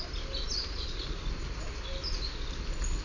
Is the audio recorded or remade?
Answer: recorded